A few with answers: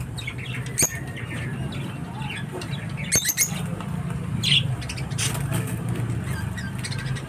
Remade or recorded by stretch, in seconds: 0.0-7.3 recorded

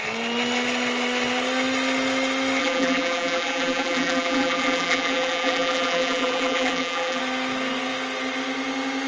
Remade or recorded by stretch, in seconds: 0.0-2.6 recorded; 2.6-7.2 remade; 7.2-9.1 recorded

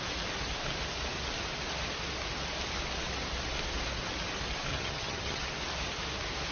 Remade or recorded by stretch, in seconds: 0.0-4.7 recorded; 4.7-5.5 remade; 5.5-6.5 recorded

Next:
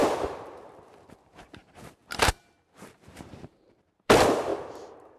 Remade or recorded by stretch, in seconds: 0.0-1.2 recorded; 1.2-5.2 remade

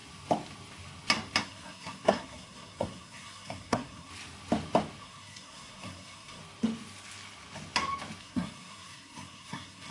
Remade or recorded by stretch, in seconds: 0.0-1.4 recorded; 1.4-4.1 remade; 4.1-5.0 recorded; 5.0-6.4 remade; 6.4-8.2 recorded; 8.2-9.9 remade

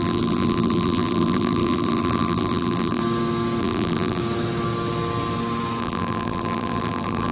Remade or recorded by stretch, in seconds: 0.0-3.0 remade; 3.0-3.6 recorded; 3.6-4.2 remade; 4.2-5.8 recorded; 5.8-7.3 remade

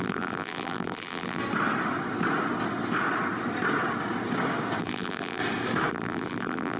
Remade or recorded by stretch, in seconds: 0.0-1.4 remade; 1.4-4.8 recorded; 4.8-5.4 remade; 5.4-5.9 recorded; 5.9-6.8 remade